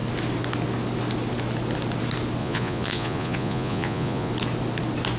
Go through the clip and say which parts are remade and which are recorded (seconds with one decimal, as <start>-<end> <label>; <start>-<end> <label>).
0.0-2.4 recorded; 2.4-4.3 remade; 4.3-5.2 recorded